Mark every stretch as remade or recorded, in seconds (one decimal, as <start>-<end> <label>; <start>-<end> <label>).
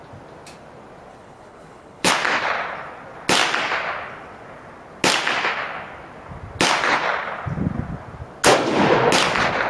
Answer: 0.0-1.1 recorded; 1.1-2.1 remade; 2.1-9.7 recorded